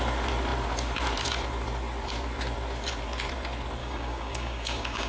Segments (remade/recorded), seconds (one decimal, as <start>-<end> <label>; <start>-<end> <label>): 0.0-3.8 recorded; 3.8-5.1 remade